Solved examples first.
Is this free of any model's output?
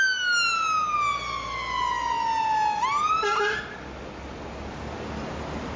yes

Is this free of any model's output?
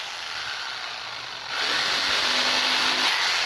yes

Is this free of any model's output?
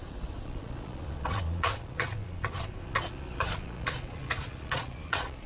no